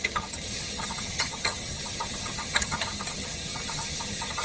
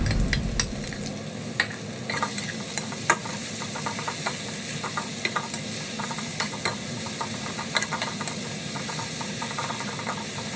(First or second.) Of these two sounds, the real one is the second